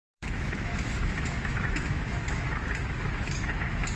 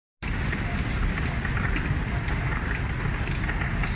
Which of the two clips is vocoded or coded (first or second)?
first